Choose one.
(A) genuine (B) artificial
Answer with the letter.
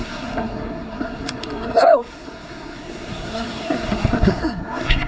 B